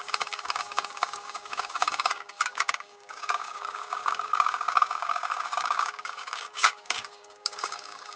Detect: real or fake fake